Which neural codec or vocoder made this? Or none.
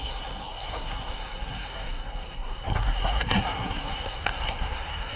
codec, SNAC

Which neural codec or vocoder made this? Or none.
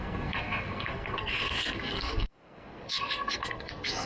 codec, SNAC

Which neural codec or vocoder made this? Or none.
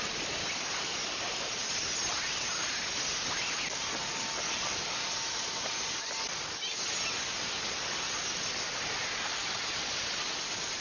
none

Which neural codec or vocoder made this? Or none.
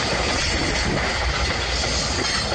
none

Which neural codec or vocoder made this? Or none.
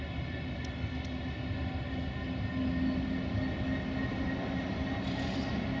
none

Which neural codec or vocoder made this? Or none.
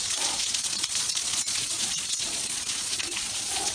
vocoder, Vocos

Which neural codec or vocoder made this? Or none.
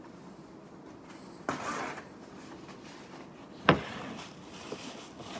none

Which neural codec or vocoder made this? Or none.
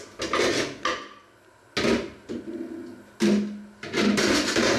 none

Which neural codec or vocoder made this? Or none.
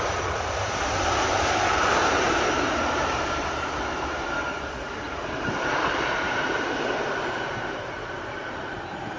vocoder, BigVGAN v2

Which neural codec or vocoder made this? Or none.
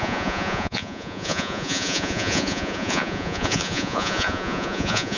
vocoder, Vocos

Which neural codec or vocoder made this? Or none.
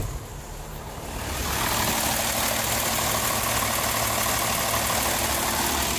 none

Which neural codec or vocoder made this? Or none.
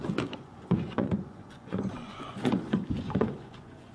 vocoder, Vocos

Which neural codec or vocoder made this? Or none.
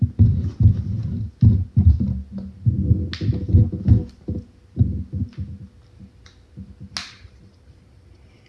none